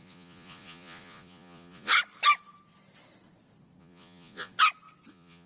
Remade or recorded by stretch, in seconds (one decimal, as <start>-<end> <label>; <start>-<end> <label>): 0.0-1.9 remade; 1.9-3.8 recorded; 3.8-4.5 remade; 4.5-5.1 recorded; 5.1-5.5 remade